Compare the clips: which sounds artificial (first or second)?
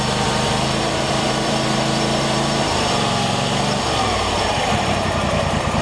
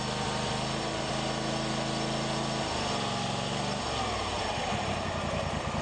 first